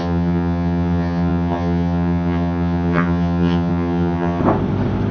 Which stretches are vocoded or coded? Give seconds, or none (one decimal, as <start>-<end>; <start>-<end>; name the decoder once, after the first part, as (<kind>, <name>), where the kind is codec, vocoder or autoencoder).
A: 0.0-4.4 (vocoder, HiFi-GAN)